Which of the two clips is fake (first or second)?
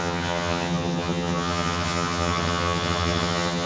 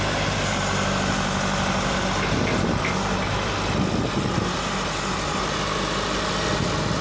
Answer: first